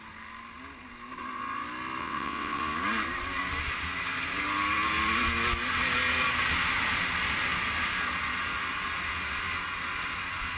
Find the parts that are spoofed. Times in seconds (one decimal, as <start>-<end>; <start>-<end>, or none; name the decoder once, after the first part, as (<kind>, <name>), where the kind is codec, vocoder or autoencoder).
2.0-2.6 (vocoder, WaveNeXt)